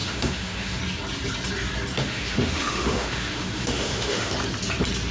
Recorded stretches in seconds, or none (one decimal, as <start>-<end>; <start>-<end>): 0.8-2.0; 4.3-5.1